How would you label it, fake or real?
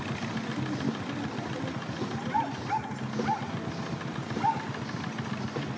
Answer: real